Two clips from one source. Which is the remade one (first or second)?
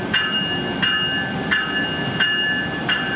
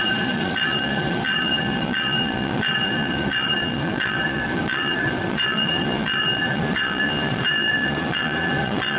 second